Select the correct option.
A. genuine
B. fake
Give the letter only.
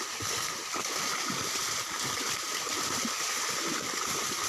A